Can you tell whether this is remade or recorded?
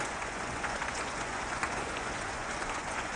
remade